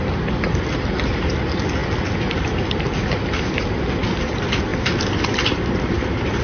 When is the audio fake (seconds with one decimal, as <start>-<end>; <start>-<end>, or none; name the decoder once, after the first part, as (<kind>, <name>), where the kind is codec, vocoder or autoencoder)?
none